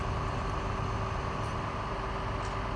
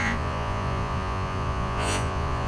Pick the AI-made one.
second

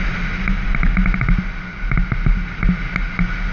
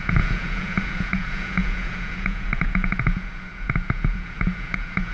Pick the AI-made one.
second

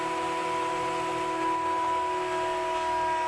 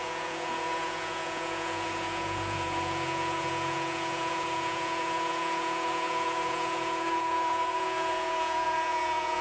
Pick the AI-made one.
second